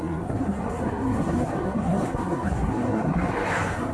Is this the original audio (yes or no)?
no